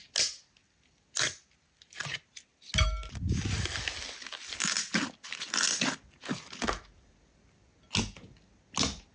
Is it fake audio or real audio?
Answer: real